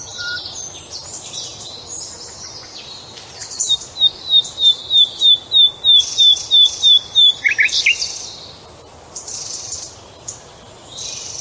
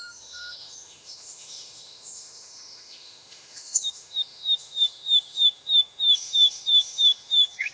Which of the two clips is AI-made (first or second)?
second